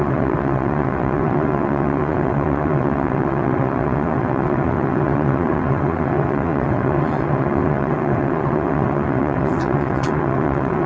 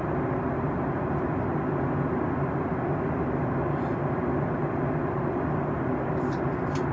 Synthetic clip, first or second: first